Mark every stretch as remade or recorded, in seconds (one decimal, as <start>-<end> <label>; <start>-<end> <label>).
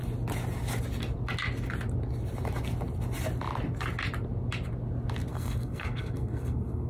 0.0-5.3 recorded; 5.3-6.9 remade